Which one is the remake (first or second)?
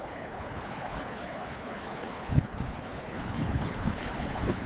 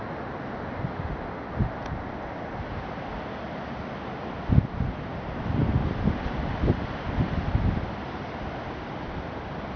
first